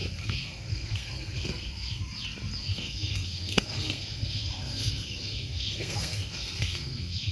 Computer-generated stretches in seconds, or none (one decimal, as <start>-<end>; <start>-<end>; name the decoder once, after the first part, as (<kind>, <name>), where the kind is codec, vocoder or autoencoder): 0.0-2.0 (codec, SNAC); 2.6-7.3